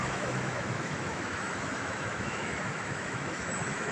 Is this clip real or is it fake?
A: fake